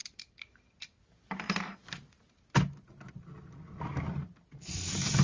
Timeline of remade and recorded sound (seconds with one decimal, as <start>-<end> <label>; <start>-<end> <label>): 0.0-5.2 recorded